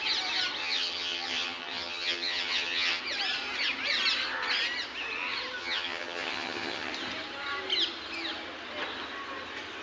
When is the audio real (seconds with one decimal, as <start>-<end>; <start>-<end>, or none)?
0.0-0.6; 3.0-5.6; 6.9-9.8